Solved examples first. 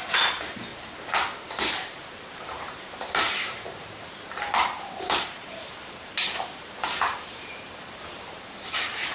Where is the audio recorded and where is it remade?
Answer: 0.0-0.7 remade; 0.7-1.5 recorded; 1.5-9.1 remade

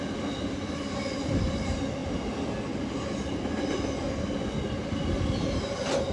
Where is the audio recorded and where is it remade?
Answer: 0.0-6.1 recorded

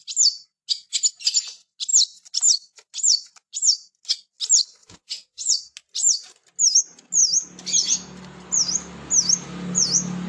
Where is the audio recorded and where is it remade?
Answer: 0.0-4.8 recorded; 4.8-5.5 remade; 5.5-10.3 recorded

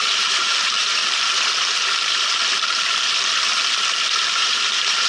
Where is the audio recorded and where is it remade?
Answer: 0.0-1.0 remade; 1.0-4.1 recorded; 4.1-5.1 remade

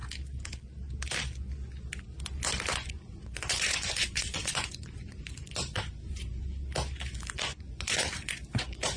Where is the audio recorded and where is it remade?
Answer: 0.0-2.7 recorded; 2.7-6.4 remade; 6.4-7.1 recorded; 7.1-9.0 remade

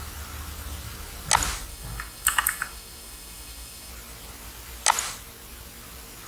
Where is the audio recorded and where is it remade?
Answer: 0.0-1.7 recorded; 1.7-3.9 remade; 3.9-6.3 recorded

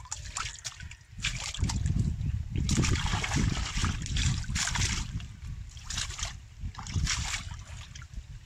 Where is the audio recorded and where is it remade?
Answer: 0.0-1.1 recorded; 1.1-2.9 remade; 2.9-3.8 recorded; 3.8-8.5 remade